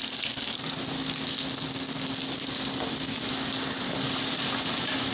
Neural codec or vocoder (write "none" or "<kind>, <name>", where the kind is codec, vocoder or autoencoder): none